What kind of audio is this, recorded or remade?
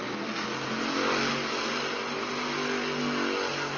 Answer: recorded